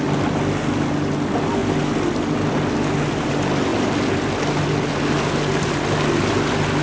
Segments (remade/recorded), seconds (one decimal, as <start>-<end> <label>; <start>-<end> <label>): 0.0-6.8 recorded